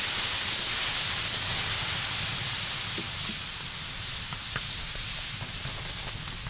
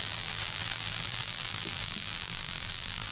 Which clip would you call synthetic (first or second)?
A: second